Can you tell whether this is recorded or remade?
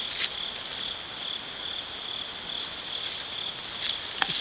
recorded